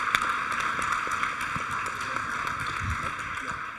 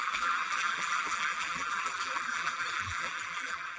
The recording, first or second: first